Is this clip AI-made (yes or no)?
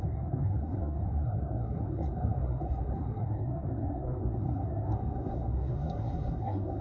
yes